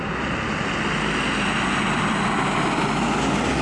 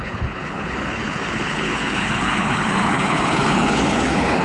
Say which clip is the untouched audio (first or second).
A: first